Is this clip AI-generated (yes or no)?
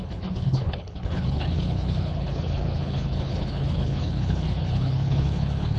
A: yes